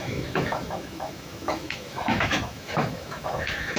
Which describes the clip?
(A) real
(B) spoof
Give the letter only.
B